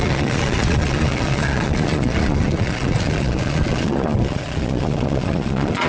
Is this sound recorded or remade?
remade